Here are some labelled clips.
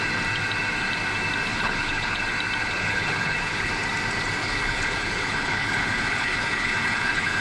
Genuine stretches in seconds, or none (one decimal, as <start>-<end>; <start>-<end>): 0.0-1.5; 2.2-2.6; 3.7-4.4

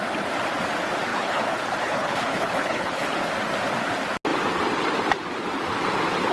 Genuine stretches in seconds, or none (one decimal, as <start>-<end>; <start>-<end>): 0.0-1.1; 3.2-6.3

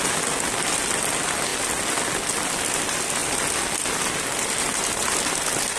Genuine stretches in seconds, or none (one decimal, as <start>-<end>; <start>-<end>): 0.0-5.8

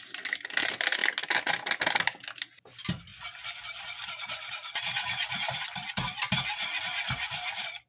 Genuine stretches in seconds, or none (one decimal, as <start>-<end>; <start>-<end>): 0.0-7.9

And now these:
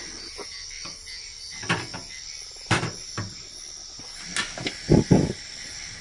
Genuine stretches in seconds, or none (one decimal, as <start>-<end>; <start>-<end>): 0.0-6.0